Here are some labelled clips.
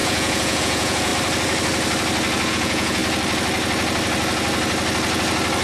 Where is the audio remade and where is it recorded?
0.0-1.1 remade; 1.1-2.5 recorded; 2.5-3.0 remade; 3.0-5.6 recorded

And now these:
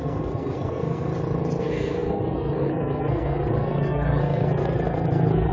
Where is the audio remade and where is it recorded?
0.0-1.1 remade; 1.1-1.6 recorded; 1.6-5.5 remade

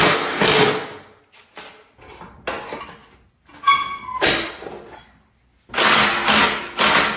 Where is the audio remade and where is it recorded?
0.0-7.2 recorded

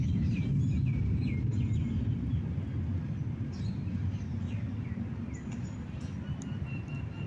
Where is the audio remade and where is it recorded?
0.0-7.3 recorded

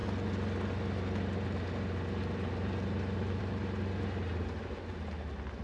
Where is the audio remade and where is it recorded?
0.0-5.6 recorded

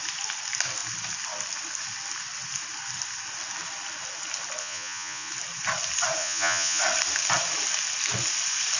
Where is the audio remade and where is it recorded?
0.0-4.6 recorded; 4.6-5.3 remade; 5.3-6.2 recorded; 6.2-6.8 remade; 6.8-8.8 recorded

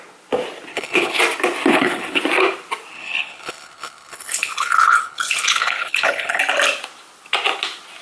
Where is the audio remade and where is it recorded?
0.0-0.7 recorded; 0.7-1.2 remade; 1.2-1.7 recorded; 1.7-2.2 remade; 2.2-2.9 recorded; 2.9-6.4 remade; 6.4-8.0 recorded

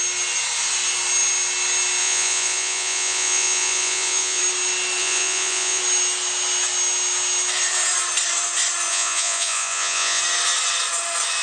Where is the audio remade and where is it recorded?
0.0-2.0 recorded; 2.0-4.4 remade; 4.4-5.0 recorded; 5.0-5.8 remade; 5.8-8.9 recorded; 8.9-10.2 remade; 10.2-11.4 recorded